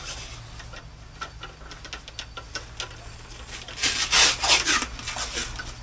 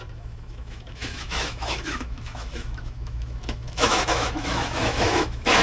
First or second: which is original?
first